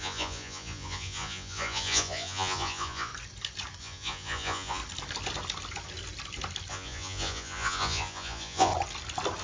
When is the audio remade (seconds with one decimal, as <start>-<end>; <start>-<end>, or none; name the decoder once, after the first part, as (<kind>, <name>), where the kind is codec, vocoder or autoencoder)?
0.0-3.1 (vocoder, Vocos); 3.8-4.8; 6.7-8.7